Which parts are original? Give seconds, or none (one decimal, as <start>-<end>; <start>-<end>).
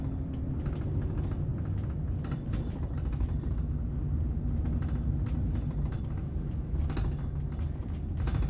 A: 0.0-1.5; 3.6-8.5